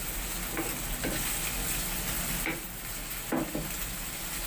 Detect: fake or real real